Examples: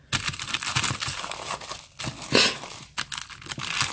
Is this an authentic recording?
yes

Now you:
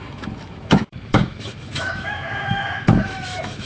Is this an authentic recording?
no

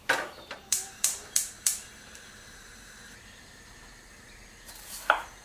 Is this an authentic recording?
no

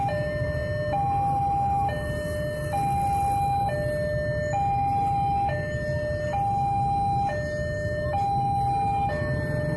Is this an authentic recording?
yes